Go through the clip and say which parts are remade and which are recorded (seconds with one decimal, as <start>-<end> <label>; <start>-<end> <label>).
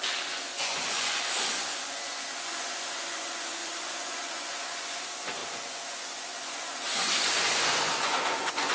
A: 0.0-8.7 remade